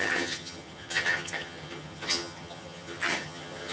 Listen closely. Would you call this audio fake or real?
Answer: fake